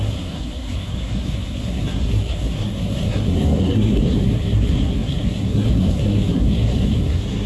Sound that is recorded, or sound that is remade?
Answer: remade